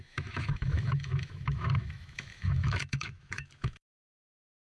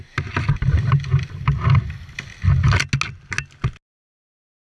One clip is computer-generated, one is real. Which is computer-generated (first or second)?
first